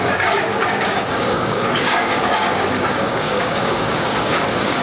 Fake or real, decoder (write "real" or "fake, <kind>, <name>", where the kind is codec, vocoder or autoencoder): fake, codec, DAC